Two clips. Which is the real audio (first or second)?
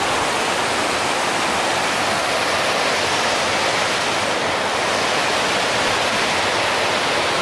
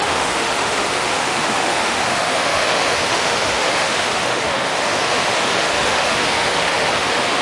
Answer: first